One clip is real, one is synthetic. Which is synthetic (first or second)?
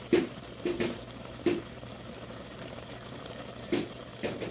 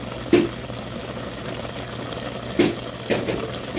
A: first